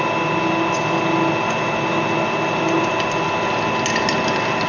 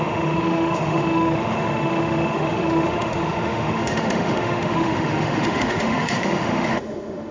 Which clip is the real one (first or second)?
first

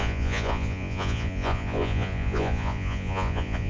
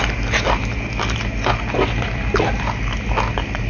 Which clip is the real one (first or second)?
second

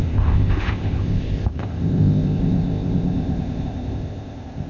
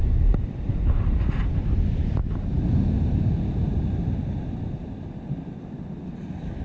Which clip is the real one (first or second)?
second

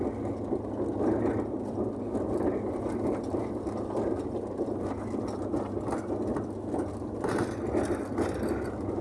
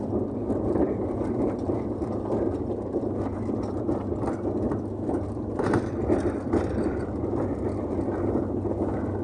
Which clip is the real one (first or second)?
first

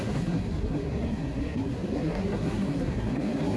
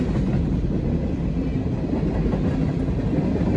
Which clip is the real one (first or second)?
second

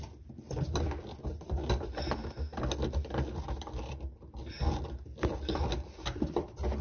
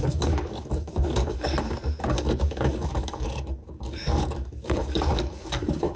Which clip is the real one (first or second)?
first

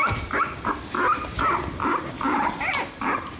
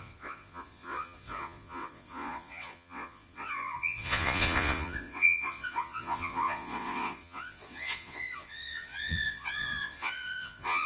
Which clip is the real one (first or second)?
first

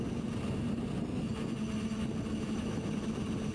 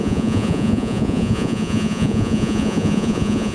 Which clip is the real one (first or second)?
first